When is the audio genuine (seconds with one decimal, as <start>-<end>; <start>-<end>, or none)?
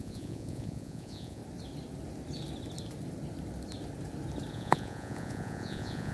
1.4-4.5